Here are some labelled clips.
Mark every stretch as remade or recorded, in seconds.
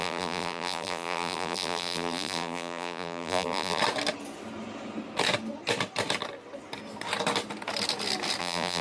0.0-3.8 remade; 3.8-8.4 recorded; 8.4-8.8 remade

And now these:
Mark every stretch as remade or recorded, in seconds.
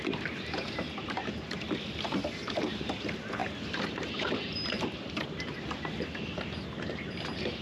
0.0-7.6 remade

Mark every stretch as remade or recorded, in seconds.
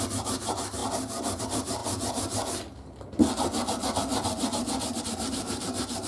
0.0-1.8 remade; 1.8-5.0 recorded; 5.0-6.1 remade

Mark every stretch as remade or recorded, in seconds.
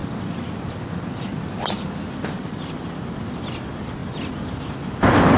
0.0-2.1 recorded; 2.1-5.4 remade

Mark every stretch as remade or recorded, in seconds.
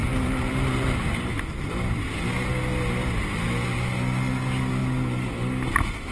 0.0-1.3 remade; 1.3-6.1 recorded